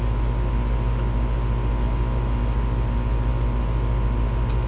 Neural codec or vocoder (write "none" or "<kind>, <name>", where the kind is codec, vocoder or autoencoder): none